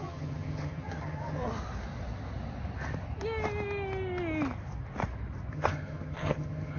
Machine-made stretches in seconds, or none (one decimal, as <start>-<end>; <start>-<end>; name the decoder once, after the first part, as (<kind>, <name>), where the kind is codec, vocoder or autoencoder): 0.0-1.4 (vocoder, HiFi-GAN); 5.5-6.8